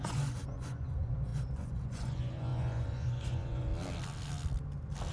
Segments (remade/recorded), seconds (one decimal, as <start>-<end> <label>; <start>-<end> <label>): 0.0-3.7 remade; 3.7-5.1 recorded